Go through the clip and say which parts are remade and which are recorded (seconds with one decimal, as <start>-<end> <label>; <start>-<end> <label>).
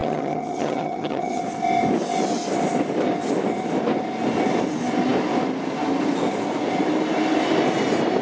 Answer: 0.0-1.4 remade; 1.4-8.2 recorded